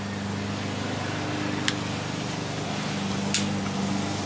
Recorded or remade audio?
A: recorded